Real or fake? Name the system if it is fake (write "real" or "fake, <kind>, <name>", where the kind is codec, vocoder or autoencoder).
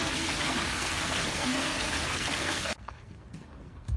fake, codec, SNAC